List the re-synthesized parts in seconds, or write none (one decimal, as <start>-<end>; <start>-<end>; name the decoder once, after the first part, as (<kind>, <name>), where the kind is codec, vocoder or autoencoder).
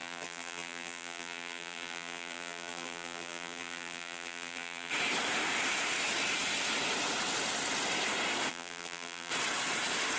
0.0-4.9 (vocoder, BigVGAN v2); 8.5-9.3